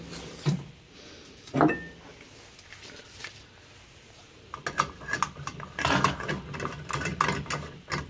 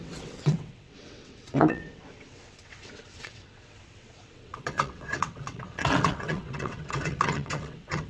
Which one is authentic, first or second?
first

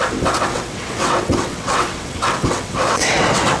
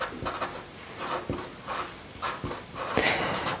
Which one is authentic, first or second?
second